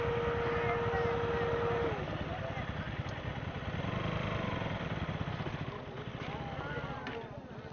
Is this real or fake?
real